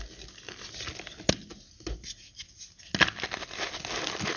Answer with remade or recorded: recorded